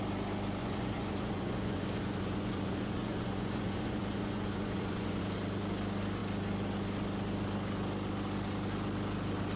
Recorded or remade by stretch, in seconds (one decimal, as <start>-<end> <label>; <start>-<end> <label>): 0.0-0.6 recorded; 0.6-5.2 remade; 5.2-9.6 recorded